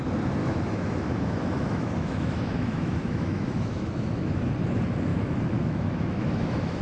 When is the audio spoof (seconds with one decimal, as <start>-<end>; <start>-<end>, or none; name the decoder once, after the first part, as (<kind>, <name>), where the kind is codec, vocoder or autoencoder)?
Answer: 0.4-4.5 (autoencoder, DAC-VAE); 5.1-6.8